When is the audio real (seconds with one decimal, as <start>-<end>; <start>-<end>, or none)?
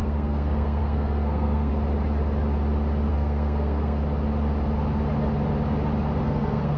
1.7-3.1; 4.0-6.2